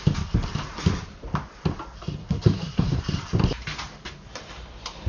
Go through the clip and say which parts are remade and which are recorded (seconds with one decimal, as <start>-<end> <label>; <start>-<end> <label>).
0.0-2.2 recorded; 2.2-3.0 remade; 3.0-5.1 recorded